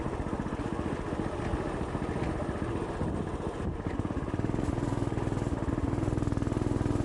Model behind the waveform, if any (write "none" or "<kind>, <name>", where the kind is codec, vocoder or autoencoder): none